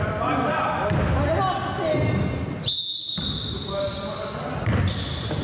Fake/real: real